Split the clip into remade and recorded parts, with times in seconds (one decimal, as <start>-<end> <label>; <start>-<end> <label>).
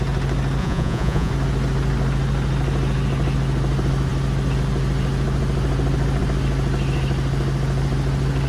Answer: 0.0-0.6 recorded; 0.6-1.3 remade; 1.3-8.5 recorded